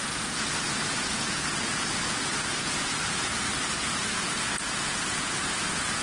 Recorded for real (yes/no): no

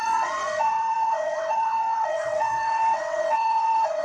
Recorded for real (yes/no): no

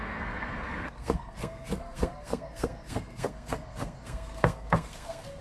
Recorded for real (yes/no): no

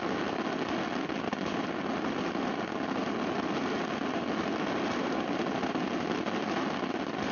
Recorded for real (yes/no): yes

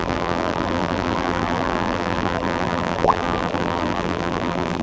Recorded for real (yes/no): no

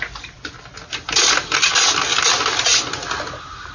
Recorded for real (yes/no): yes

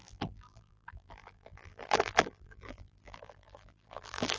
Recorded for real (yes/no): no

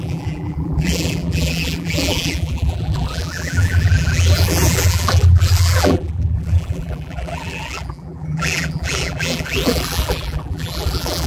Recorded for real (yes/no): no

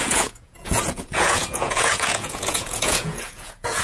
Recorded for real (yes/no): no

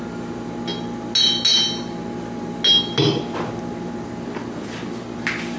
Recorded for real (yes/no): yes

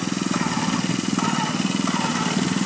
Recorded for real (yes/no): yes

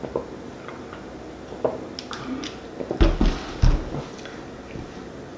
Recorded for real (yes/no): yes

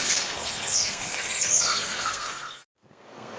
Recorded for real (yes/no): no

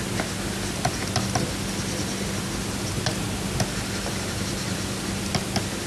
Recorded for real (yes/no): yes